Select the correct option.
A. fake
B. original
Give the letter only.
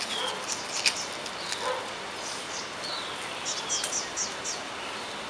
B